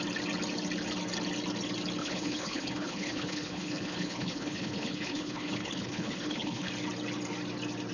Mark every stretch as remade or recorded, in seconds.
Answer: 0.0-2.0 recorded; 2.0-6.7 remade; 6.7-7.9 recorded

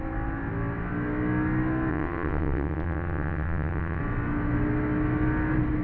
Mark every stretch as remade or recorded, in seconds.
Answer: 0.0-1.9 recorded; 1.9-4.0 remade; 4.0-5.8 recorded

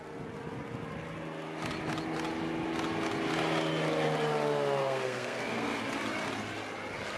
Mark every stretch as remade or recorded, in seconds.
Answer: 0.0-4.8 recorded; 4.8-5.8 remade; 5.8-7.2 recorded

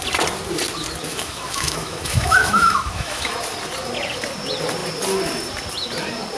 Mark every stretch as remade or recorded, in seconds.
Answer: 0.0-1.1 recorded; 1.1-3.3 remade; 3.3-6.4 recorded